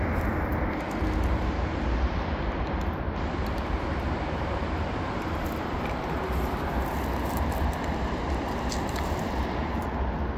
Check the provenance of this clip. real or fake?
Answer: real